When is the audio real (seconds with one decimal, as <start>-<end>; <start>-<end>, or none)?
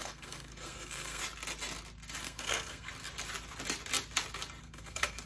1.2-2.2; 2.9-4.6